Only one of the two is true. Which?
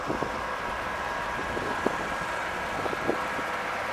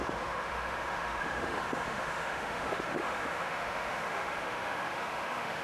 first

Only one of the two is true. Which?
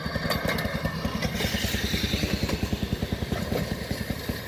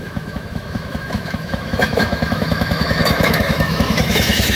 first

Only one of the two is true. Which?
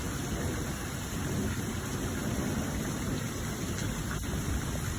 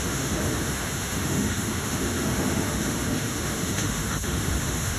first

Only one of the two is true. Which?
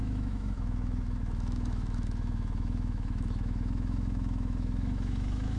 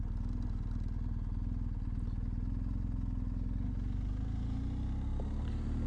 second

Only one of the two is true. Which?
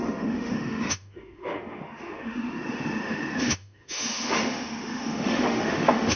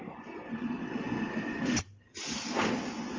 second